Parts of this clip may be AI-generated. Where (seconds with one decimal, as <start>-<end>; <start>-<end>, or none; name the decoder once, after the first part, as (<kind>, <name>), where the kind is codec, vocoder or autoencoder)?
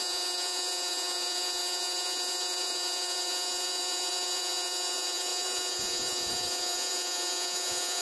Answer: 0.0-8.0 (vocoder, Vocos)